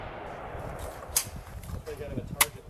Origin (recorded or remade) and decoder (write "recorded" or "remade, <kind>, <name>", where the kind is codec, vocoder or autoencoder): recorded